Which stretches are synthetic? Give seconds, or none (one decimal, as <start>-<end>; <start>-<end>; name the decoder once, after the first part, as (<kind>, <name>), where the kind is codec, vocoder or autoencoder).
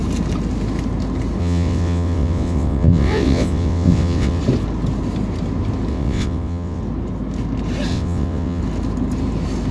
1.4-4.4 (vocoder, WaveNeXt); 5.9-6.8; 7.9-8.6